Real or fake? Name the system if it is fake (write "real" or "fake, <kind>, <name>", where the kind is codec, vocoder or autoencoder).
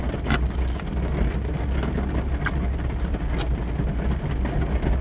real